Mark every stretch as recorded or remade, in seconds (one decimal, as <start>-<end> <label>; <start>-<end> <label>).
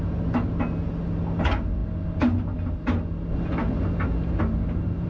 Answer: 0.0-5.1 recorded